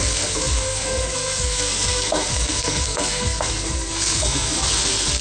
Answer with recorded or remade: remade